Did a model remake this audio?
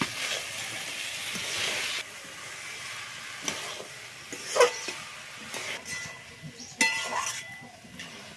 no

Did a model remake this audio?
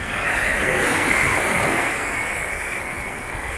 yes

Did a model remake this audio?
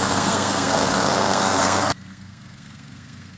yes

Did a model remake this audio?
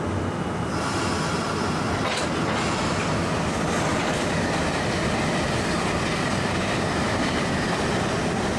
no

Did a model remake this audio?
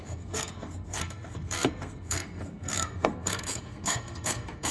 yes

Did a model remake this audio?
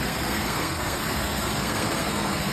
yes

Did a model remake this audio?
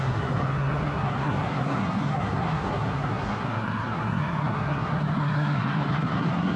yes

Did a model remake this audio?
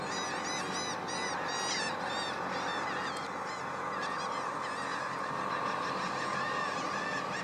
no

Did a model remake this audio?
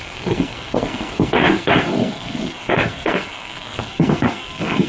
yes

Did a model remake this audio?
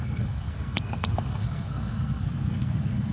yes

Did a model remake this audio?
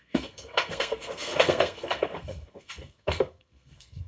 yes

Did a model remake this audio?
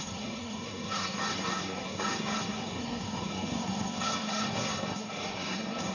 yes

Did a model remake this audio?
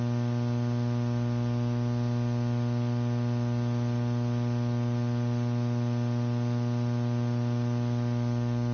no